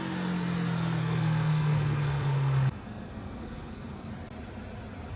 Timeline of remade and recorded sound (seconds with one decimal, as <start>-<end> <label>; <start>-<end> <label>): 0.0-1.0 recorded; 1.0-4.1 remade; 4.1-5.2 recorded